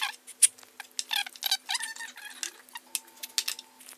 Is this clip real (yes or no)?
yes